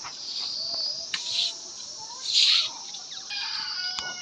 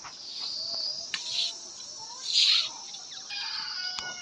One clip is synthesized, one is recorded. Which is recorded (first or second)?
second